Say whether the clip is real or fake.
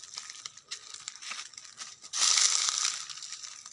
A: real